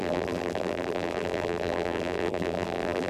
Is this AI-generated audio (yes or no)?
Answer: yes